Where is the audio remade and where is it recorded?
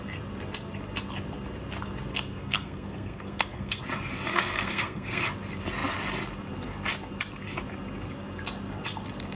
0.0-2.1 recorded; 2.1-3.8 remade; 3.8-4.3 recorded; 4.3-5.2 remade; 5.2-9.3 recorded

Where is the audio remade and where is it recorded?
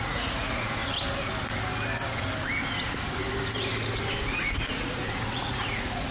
0.0-0.8 remade; 0.8-4.5 recorded; 4.5-6.1 remade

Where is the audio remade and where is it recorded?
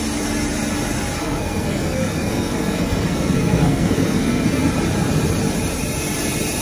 0.0-1.2 recorded; 1.2-4.7 remade; 4.7-6.6 recorded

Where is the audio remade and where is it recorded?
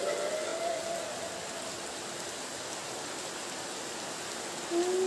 0.0-5.1 recorded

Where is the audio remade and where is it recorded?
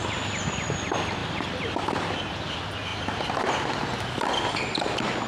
0.0-1.2 recorded; 1.2-1.8 remade; 1.8-5.3 recorded